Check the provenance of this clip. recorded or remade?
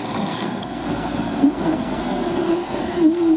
remade